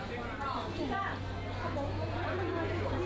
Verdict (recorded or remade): recorded